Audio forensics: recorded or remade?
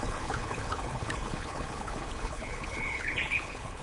remade